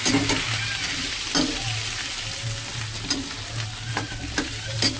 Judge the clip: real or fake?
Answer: real